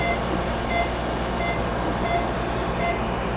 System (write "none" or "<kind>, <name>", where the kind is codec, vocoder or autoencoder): none